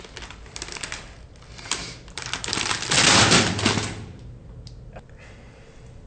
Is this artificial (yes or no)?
no